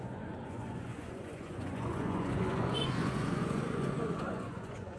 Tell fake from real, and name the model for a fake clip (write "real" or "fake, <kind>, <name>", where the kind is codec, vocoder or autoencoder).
fake, vocoder, Vocos